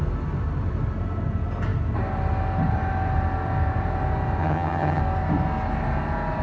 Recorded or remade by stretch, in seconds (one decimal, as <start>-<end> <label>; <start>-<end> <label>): 0.0-4.4 recorded; 4.4-5.0 remade; 5.0-6.4 recorded